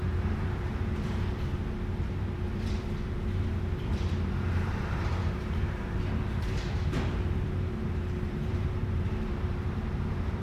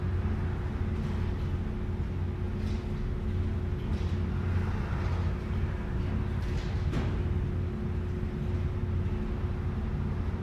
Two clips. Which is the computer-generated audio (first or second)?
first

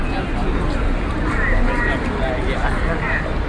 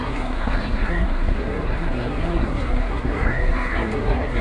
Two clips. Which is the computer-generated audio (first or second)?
second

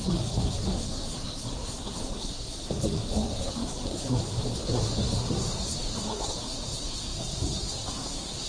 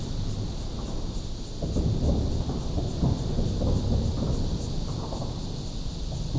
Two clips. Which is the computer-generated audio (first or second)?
first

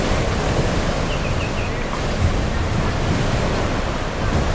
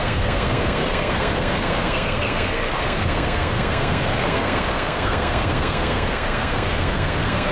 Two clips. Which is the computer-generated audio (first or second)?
second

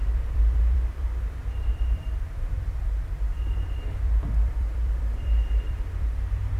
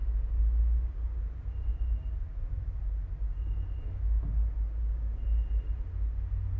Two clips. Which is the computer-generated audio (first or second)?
first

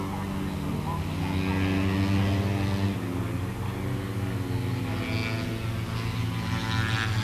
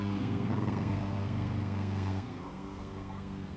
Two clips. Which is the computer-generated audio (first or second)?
second